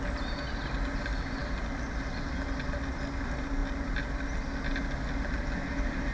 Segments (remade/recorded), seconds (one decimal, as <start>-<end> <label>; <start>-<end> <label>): 0.0-6.1 recorded